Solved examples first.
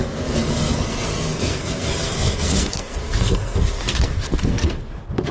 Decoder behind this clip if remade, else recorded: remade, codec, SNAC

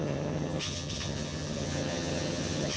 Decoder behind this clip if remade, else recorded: remade, vocoder, HiFi-GAN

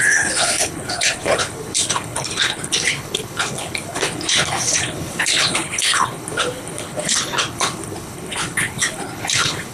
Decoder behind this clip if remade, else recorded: remade, codec, HILCodec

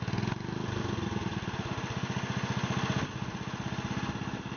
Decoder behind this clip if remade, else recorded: recorded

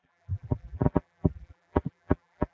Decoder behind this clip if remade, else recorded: remade, vocoder, BigVGAN v2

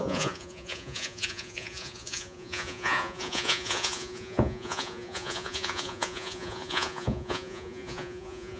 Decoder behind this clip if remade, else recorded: remade, vocoder, Vocos